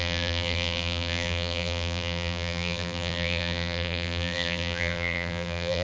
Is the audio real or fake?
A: fake